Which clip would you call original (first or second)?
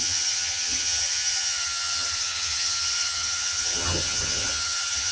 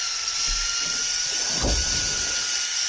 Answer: second